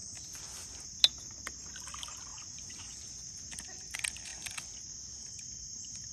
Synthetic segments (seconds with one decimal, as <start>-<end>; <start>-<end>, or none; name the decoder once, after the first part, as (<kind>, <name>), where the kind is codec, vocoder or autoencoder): 2.3-3.3 (vocoder, Vocos)

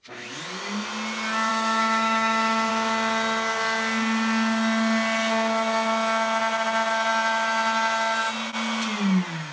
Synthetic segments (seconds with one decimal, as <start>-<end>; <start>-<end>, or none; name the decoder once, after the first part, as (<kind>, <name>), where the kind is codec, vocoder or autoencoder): 1.5-2.7 (autoencoder, DAC-VAE)

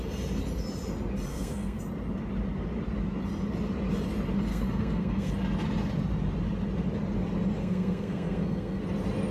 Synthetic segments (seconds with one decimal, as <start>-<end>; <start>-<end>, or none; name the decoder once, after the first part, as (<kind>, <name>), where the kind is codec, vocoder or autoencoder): 1.3-1.8 (codec, SNAC); 4.5-5.3; 7.6-8.8

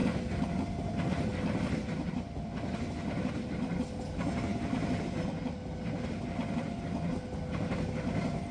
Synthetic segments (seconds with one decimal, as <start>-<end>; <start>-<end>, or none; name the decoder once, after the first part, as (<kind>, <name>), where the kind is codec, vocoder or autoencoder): none

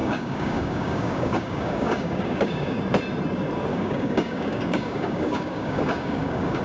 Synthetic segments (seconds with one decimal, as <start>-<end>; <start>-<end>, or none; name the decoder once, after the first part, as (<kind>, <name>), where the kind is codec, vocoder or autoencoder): 0.0-2.8 (codec, DAC); 3.7-6.6

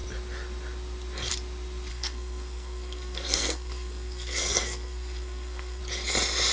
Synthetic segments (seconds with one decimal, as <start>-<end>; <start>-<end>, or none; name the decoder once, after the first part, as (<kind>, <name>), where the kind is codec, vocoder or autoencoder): 1.9-5.8 (codec, SNAC)

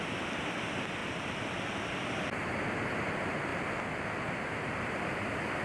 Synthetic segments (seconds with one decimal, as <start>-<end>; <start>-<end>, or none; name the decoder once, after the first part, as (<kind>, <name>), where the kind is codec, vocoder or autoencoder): 1.0-2.7 (vocoder, BigVGAN v2)